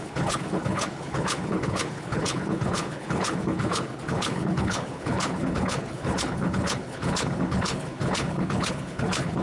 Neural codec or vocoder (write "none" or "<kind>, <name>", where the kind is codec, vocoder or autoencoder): codec, HILCodec